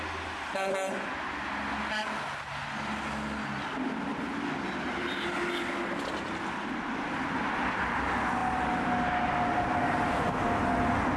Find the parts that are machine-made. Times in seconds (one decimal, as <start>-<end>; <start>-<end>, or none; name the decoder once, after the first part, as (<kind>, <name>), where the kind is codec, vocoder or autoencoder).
none